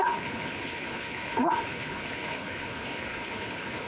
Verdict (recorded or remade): remade